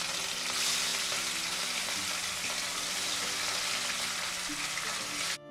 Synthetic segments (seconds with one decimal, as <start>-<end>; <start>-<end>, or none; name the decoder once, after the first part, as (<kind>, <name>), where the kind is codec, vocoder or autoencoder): none